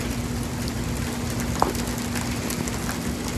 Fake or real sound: real